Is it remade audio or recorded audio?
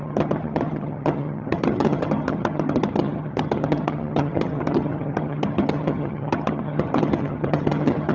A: remade